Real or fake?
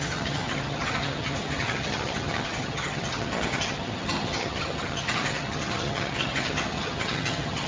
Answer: fake